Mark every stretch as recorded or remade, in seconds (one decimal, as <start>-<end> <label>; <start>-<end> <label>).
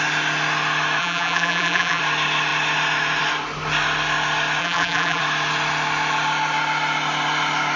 0.0-1.0 recorded; 1.0-2.0 remade; 2.0-4.6 recorded; 4.6-5.2 remade; 5.2-7.8 recorded